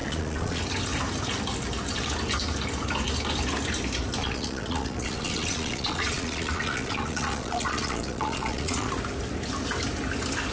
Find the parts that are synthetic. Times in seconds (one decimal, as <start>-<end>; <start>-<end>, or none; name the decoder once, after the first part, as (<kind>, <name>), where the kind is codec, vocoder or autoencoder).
0.0-0.6 (vocoder, Vocos); 4.2-8.9